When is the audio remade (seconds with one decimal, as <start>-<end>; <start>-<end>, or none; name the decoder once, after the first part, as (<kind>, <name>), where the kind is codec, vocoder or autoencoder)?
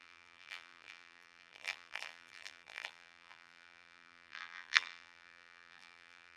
0.0-6.4 (vocoder, BigVGAN v2)